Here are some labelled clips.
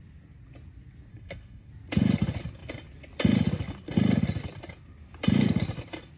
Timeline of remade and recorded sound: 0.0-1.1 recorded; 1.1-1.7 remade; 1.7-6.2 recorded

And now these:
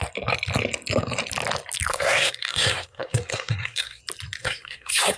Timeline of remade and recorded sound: 0.0-1.9 recorded; 1.9-4.0 remade; 4.0-4.4 recorded; 4.4-5.2 remade